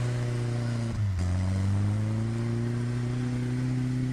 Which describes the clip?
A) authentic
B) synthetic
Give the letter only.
A